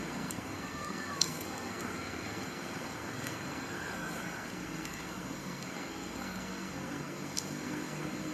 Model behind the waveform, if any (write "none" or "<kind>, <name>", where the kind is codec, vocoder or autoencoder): codec, SNAC